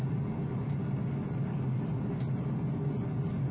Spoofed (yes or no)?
no